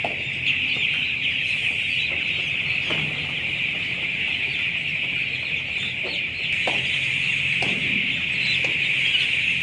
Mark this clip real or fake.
real